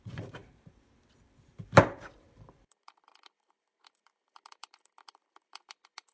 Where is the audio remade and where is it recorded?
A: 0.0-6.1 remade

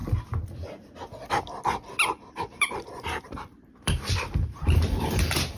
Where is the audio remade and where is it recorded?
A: 0.0-2.1 recorded; 2.1-5.6 remade